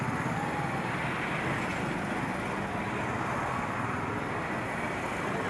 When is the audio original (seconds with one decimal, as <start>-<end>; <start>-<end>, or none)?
0.0-5.5